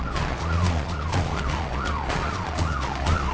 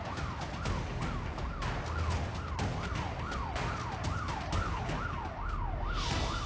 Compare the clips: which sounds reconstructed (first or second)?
first